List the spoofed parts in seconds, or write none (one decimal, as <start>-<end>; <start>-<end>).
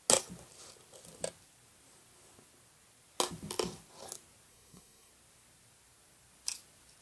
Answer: 4.5-5.1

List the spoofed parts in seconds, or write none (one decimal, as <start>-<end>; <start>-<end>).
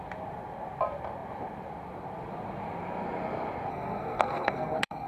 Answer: 3.7-5.1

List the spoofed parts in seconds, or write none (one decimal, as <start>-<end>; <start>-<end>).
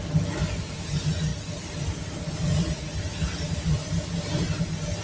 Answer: none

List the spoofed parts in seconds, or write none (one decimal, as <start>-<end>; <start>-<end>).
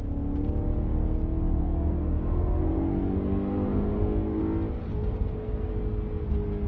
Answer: 1.6-4.4; 5.0-5.7